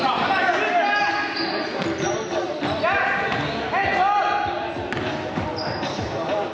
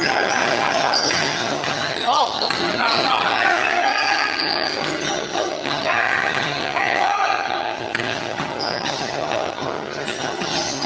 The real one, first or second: first